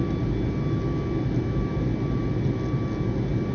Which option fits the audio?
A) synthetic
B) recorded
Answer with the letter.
B